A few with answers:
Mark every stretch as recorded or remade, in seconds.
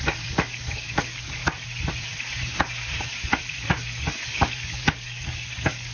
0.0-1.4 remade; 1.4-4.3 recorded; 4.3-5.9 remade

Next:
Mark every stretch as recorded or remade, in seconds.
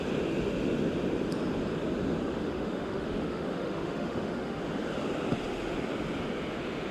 0.0-2.2 recorded; 2.2-4.6 remade; 4.6-6.9 recorded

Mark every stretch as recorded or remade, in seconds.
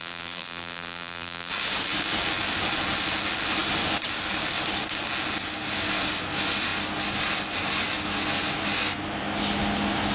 0.0-1.5 remade; 1.5-10.1 recorded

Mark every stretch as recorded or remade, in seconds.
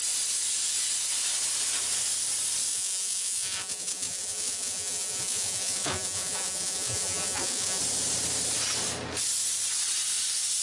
0.0-2.7 recorded; 2.7-7.8 remade; 7.8-10.6 recorded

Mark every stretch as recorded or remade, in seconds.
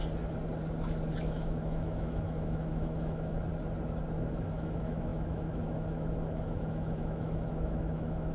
0.0-1.2 recorded; 1.2-3.5 remade; 3.5-4.3 recorded; 4.3-8.3 remade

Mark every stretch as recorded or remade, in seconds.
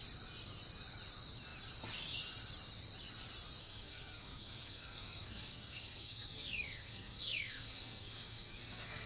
0.0-3.6 recorded; 3.6-9.1 remade